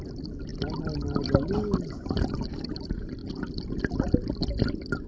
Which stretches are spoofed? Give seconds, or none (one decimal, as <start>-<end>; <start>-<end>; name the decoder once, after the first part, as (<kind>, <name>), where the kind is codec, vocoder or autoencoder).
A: none